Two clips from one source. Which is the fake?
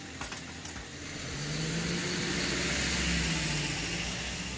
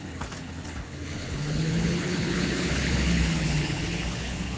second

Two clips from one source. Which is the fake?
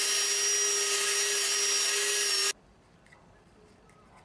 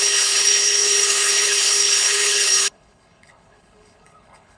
second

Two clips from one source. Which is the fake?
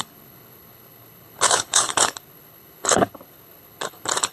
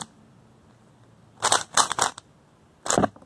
first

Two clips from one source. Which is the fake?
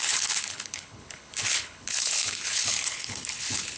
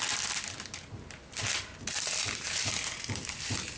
first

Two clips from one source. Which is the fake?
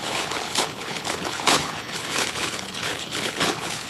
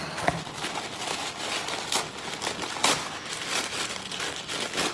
first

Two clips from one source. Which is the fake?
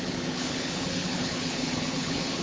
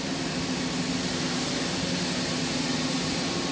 first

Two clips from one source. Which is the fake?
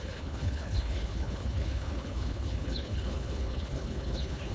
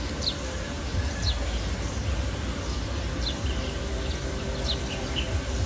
first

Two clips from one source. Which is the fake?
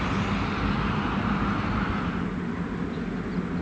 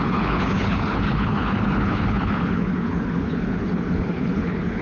second